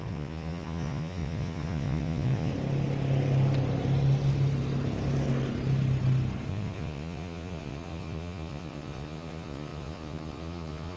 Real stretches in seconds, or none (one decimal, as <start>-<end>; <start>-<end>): 2.5-6.5